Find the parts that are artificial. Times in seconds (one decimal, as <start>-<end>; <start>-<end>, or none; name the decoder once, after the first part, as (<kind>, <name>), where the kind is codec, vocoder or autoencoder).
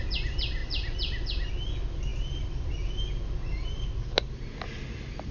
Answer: none